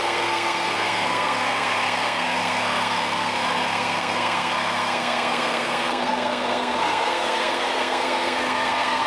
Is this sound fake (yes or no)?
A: yes